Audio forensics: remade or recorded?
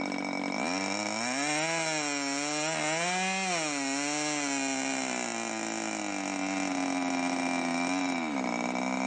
recorded